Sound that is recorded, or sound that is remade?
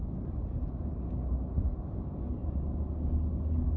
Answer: recorded